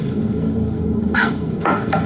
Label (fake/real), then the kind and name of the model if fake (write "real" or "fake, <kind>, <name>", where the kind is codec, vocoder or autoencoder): fake, codec, SNAC